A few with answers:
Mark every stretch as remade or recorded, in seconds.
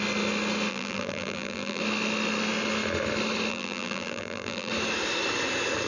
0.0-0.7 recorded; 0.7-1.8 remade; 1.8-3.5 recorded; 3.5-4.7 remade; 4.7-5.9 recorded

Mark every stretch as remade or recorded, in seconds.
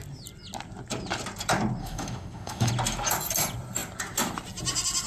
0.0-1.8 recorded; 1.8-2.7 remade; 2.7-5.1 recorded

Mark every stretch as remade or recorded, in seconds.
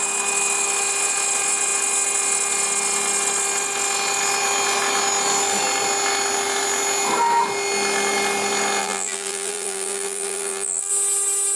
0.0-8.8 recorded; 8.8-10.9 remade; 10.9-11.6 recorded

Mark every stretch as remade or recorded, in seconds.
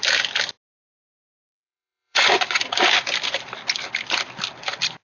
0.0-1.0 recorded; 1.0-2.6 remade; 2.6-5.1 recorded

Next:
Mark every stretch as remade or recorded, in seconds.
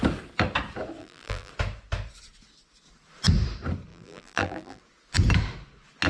0.0-1.0 recorded; 1.0-1.5 remade; 1.5-3.9 recorded; 3.9-4.8 remade; 4.8-6.1 recorded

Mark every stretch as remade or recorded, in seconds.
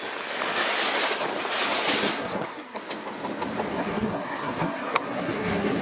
0.0-2.1 recorded; 2.1-2.8 remade; 2.8-3.7 recorded; 3.7-5.8 remade